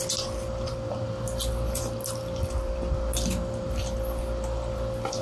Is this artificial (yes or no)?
no